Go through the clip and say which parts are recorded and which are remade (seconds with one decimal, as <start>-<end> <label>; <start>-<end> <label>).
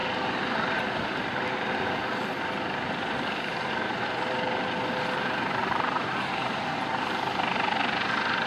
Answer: 0.0-5.6 recorded; 5.6-6.9 remade; 6.9-8.5 recorded